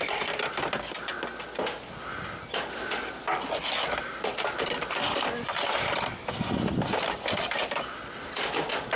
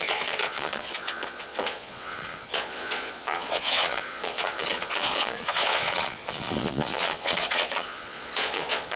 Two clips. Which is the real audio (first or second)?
first